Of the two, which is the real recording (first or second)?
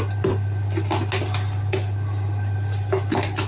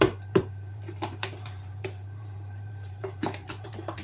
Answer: first